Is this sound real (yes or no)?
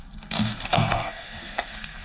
no